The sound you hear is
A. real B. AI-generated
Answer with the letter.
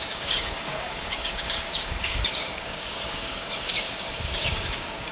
B